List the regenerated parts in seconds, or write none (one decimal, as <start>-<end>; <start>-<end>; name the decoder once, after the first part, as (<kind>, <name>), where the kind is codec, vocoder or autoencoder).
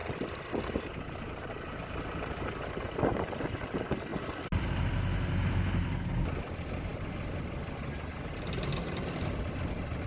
none